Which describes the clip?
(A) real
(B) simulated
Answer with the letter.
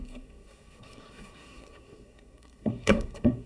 B